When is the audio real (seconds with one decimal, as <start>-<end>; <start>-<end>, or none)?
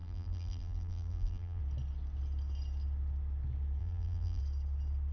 1.6-3.8; 4.4-5.1